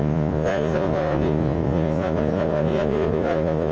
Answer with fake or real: fake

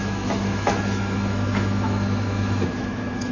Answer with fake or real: fake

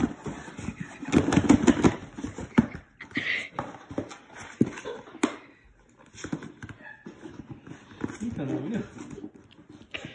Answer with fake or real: real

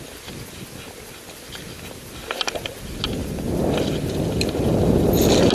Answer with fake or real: real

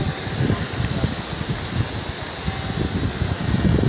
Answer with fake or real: real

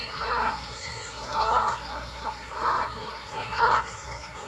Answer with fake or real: fake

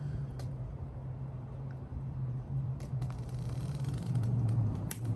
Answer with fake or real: fake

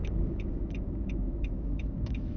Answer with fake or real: fake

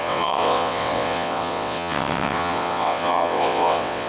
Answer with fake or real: fake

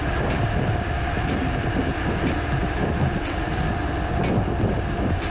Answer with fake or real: real